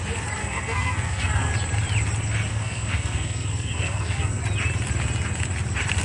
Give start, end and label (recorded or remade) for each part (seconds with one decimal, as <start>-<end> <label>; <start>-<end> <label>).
0.0-0.4 recorded; 0.4-1.5 remade; 1.5-2.5 recorded; 2.5-4.4 remade; 4.4-6.0 recorded

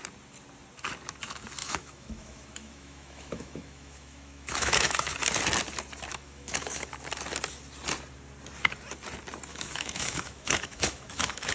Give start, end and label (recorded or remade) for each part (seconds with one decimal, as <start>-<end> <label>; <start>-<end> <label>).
0.0-1.6 recorded; 1.6-5.1 remade; 5.1-6.1 recorded; 6.1-6.9 remade; 6.9-9.5 recorded; 9.5-11.5 remade

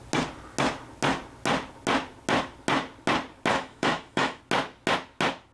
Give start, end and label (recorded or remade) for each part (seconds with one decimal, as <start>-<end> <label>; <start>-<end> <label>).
0.0-3.5 recorded; 3.5-4.4 remade; 4.4-5.5 recorded

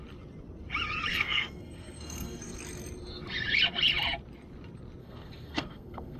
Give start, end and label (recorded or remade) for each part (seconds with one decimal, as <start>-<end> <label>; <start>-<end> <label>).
0.0-1.1 recorded; 1.1-2.6 remade; 2.6-5.0 recorded; 5.0-6.2 remade

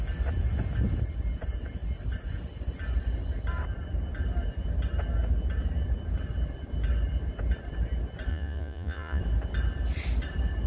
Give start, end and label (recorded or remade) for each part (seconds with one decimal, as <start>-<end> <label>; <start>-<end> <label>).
0.0-8.3 recorded; 8.3-9.2 remade; 9.2-10.7 recorded

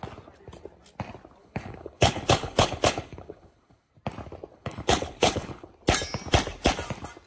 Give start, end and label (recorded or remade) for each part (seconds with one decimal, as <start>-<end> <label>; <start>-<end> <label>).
0.0-1.4 recorded; 1.4-3.9 remade; 3.9-4.5 recorded; 4.5-5.7 remade; 5.7-7.3 recorded